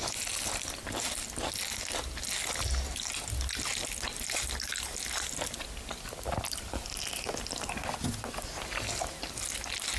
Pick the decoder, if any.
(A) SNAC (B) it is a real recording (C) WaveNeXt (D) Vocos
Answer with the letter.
B